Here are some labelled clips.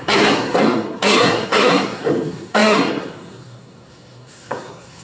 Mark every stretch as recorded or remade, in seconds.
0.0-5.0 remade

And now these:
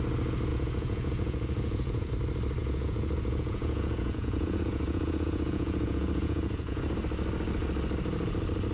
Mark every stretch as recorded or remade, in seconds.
0.0-0.5 recorded; 0.5-2.1 remade; 2.1-2.6 recorded; 2.6-6.8 remade; 6.8-8.7 recorded

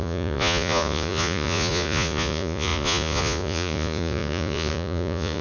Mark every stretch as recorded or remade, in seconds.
0.0-5.4 remade

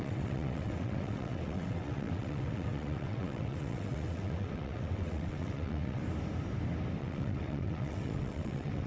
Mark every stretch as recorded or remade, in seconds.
0.0-6.0 remade; 6.0-7.0 recorded; 7.0-8.9 remade

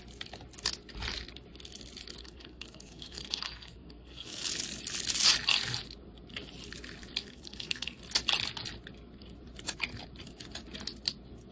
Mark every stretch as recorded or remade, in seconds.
0.0-2.2 recorded; 2.2-4.5 remade; 4.5-7.2 recorded; 7.2-8.0 remade; 8.0-11.5 recorded